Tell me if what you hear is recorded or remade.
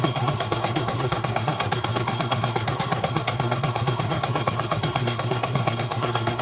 remade